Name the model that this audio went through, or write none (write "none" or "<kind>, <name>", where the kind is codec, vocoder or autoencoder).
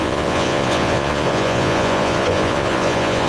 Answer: vocoder, Vocos